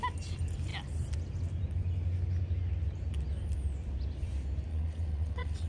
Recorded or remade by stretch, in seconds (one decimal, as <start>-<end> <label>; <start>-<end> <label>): 0.0-4.7 recorded; 4.7-5.7 remade